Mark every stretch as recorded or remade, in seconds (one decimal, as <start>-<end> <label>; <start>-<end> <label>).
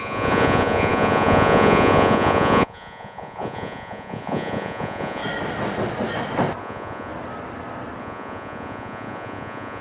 0.0-5.2 remade; 5.2-6.6 recorded; 6.6-7.1 remade; 7.1-8.0 recorded; 8.0-9.8 remade